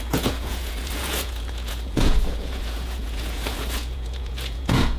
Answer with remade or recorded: remade